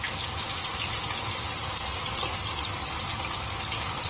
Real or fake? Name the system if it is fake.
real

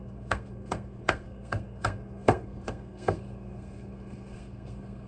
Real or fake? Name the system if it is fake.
fake, codec, SNAC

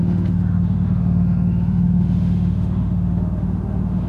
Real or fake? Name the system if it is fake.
fake, autoencoder, DAC-VAE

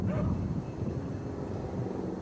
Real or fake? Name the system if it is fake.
real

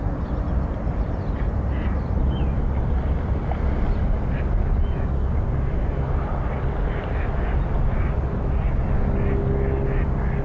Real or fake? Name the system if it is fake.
real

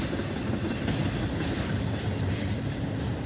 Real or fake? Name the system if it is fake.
real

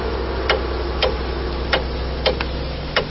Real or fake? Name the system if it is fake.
real